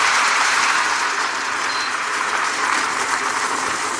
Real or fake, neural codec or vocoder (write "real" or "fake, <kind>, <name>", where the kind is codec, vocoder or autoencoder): fake, vocoder, BigVGAN v2